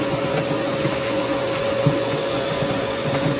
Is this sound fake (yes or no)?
yes